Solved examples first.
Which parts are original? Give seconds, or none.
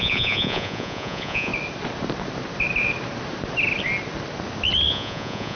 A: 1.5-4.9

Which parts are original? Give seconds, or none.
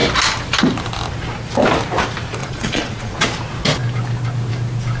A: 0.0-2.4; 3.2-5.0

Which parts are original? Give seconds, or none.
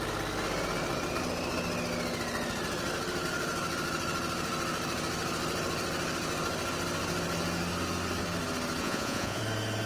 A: 0.0-8.8; 9.4-9.9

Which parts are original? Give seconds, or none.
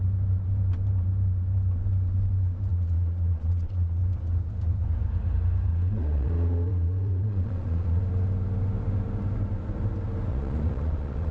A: 0.0-2.7; 4.0-5.7; 8.0-10.3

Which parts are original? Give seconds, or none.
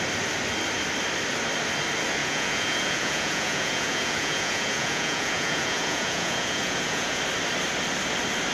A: 0.0-2.2; 7.2-8.5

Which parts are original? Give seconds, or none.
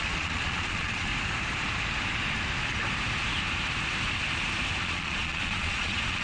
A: 1.1-4.8